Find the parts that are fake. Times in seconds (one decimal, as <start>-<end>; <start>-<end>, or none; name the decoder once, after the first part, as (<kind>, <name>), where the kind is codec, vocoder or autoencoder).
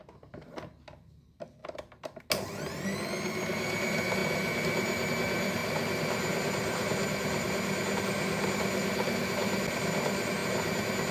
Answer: 1.6-2.2 (vocoder, BigVGAN v2)